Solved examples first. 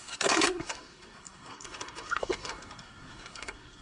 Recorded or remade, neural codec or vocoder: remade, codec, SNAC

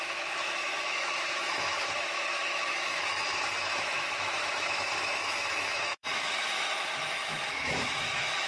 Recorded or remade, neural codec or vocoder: remade, autoencoder, DAC-VAE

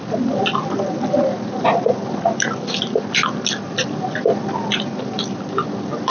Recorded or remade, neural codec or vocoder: recorded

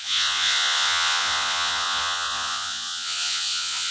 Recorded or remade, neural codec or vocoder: remade, vocoder, Vocos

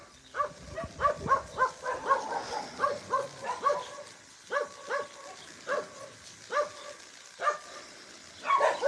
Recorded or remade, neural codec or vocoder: recorded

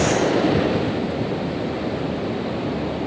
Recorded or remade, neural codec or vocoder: recorded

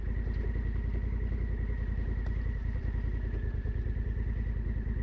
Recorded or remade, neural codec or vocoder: recorded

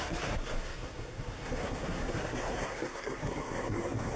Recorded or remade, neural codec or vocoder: remade, codec, SNAC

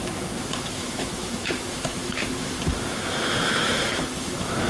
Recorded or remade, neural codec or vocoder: remade, autoencoder, DAC-VAE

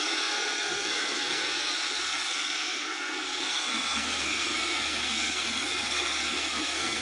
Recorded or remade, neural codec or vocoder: remade, codec, SNAC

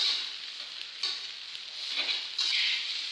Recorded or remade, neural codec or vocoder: recorded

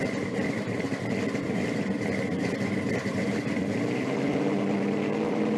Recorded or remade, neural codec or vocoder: remade, vocoder, BigVGAN v2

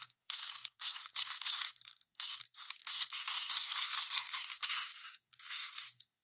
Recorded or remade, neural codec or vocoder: remade, codec, SNAC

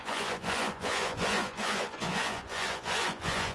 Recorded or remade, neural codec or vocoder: remade, vocoder, Vocos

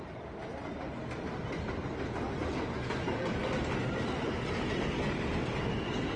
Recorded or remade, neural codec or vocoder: recorded